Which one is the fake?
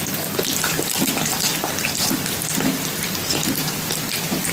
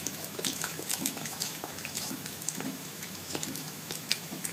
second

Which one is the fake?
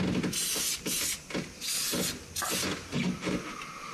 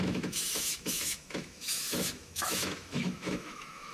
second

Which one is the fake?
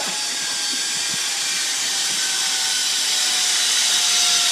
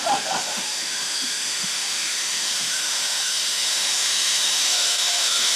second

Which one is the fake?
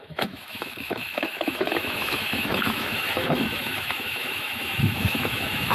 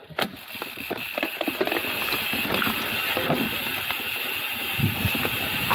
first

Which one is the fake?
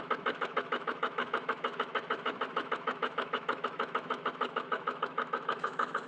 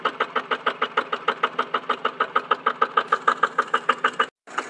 first